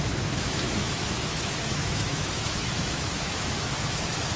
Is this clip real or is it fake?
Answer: fake